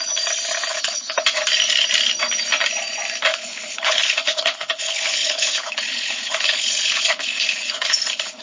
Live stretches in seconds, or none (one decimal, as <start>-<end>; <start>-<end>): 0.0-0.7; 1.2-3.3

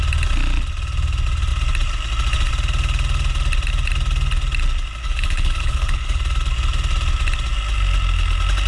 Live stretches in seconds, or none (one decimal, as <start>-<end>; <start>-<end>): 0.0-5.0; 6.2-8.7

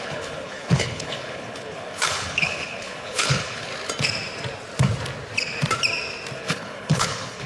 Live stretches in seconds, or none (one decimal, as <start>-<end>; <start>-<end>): 3.7-6.4

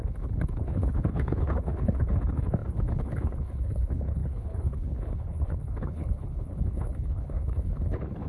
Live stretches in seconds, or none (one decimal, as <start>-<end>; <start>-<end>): none